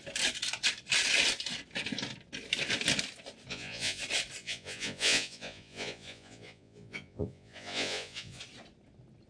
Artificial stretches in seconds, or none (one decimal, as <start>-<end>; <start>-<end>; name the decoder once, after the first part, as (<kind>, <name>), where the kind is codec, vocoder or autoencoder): 3.5-4.0 (vocoder, Vocos); 4.4-8.4